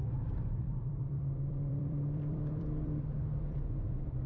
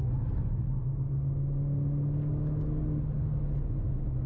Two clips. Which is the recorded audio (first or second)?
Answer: second